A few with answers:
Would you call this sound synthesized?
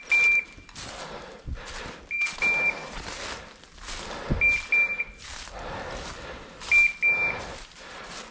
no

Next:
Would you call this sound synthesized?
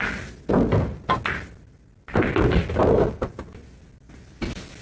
no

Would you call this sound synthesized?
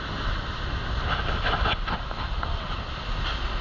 no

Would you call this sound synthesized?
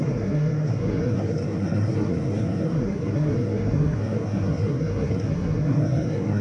yes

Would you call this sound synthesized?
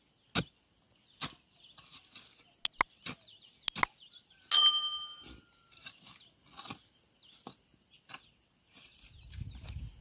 no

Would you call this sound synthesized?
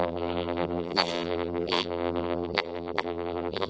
yes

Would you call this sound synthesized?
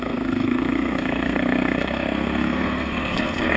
yes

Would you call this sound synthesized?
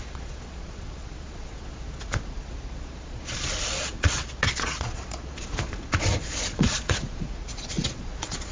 yes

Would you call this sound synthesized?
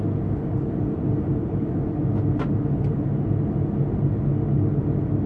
no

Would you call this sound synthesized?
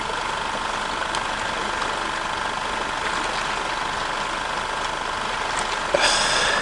no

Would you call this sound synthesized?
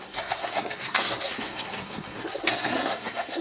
yes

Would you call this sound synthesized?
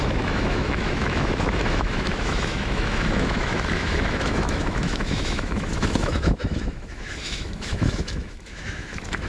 yes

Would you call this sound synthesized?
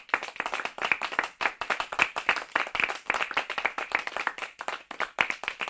yes